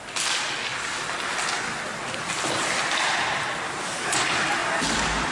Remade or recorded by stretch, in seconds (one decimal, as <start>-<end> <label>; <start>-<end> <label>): 0.0-5.3 recorded